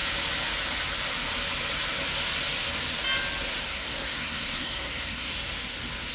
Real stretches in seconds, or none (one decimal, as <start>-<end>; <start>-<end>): 0.0-3.6; 5.3-6.1